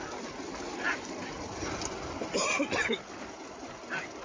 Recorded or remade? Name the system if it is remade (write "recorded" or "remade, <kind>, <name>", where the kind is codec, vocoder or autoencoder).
recorded